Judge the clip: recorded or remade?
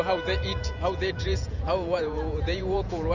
remade